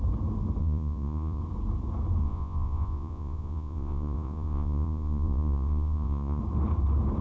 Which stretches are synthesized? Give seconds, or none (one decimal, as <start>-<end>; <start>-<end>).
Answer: 0.6-1.4; 2.2-6.4